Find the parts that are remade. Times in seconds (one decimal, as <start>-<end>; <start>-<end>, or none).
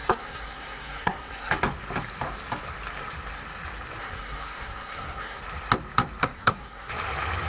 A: 0.0-1.5; 4.0-5.4; 6.2-6.9